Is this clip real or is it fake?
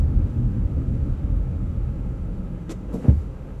fake